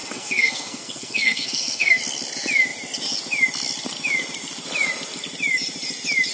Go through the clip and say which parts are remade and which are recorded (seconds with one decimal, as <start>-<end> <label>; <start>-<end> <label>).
0.0-2.0 remade; 2.0-6.3 recorded